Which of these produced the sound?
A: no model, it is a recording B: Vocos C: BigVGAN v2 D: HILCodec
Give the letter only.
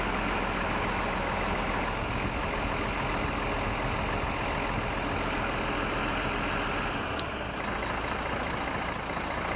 A